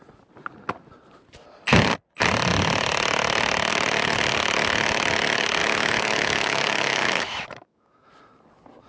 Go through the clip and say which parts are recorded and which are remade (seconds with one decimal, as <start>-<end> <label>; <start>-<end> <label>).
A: 0.0-5.6 recorded; 5.6-8.1 remade; 8.1-8.9 recorded